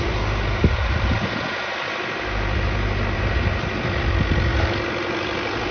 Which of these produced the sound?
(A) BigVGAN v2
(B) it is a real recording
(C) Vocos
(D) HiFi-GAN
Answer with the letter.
B